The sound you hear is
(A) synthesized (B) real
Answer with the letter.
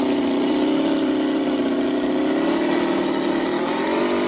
A